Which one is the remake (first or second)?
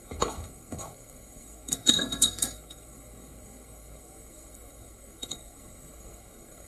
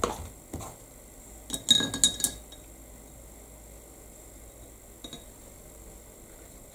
first